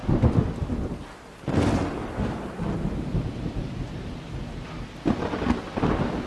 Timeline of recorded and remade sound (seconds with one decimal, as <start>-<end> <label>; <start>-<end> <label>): 0.0-6.3 recorded